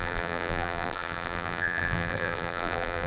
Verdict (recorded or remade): remade